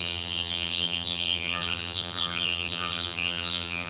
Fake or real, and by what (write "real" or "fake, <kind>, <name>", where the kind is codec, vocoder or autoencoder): fake, vocoder, BigVGAN v2